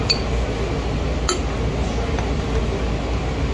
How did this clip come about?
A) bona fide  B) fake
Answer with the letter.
A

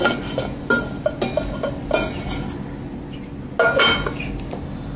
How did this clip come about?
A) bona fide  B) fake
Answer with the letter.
A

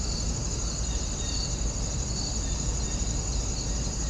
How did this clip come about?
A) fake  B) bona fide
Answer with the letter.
B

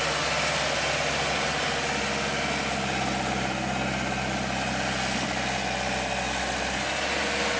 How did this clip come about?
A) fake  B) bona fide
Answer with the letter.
B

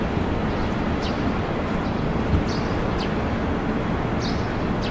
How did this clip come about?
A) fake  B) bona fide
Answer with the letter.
B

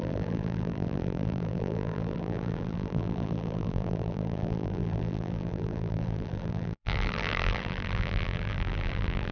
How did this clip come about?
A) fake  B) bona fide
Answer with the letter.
A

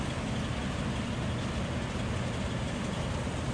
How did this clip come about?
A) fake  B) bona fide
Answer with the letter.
B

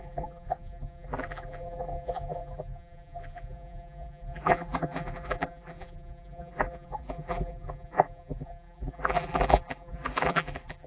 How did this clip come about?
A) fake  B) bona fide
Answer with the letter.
A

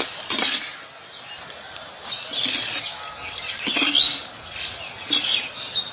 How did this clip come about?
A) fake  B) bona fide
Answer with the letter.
B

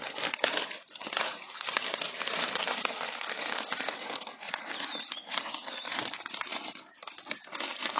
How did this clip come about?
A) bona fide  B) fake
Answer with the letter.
A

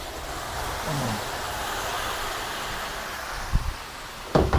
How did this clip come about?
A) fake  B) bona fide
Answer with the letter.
B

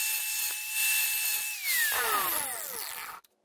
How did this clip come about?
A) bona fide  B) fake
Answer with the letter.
A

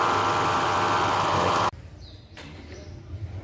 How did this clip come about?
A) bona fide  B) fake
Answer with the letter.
B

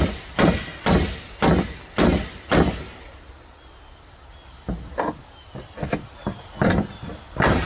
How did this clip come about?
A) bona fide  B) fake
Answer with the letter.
A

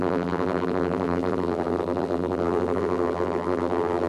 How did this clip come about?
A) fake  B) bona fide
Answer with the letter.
A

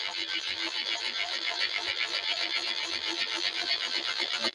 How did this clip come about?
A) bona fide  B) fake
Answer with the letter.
B